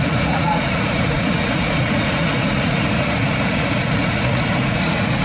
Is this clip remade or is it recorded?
remade